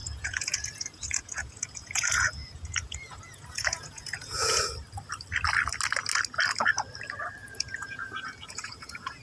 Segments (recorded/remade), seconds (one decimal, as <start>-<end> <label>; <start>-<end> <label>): 0.0-4.6 remade; 4.6-7.4 recorded; 7.4-9.2 remade